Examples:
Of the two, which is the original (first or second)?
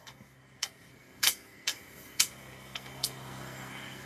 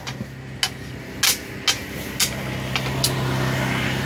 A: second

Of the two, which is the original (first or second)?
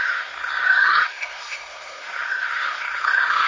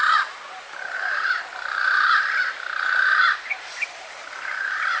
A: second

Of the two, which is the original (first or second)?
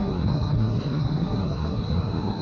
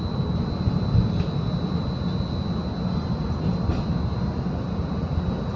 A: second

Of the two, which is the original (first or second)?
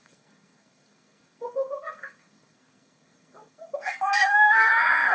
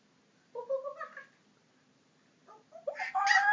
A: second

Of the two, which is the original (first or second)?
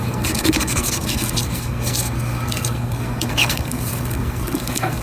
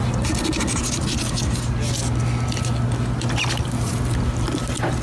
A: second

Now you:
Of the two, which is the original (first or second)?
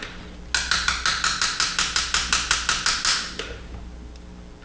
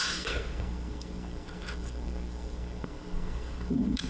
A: first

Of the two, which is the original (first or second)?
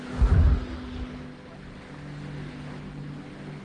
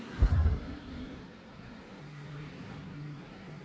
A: first